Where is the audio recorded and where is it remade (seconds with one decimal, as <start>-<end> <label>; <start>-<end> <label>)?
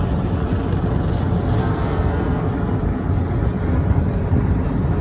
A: 0.0-1.6 recorded; 1.6-2.5 remade; 2.5-5.0 recorded